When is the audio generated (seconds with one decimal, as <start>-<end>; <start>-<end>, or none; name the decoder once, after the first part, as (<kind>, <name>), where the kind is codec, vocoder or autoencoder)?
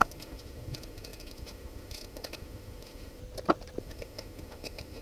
0.0-3.2 (autoencoder, DAC-VAE); 3.8-5.0